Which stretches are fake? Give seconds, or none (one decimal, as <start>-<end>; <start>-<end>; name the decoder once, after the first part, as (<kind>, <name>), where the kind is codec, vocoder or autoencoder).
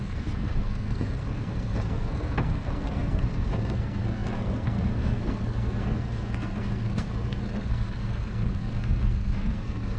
0.0-10.0 (codec, SNAC)